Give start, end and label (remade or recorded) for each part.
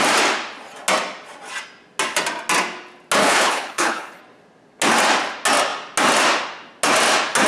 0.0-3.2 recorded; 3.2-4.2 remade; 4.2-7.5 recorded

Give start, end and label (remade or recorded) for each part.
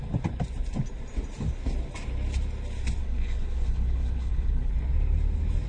0.0-3.0 recorded; 3.0-4.7 remade; 4.7-5.7 recorded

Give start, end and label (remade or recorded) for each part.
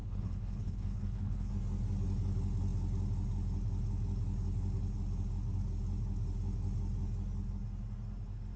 0.0-1.5 remade; 1.5-8.6 recorded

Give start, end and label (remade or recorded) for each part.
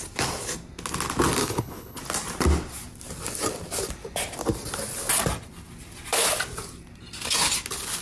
0.0-1.4 recorded; 1.4-2.0 remade; 2.0-8.0 recorded